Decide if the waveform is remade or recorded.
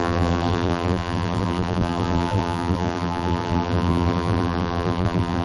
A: remade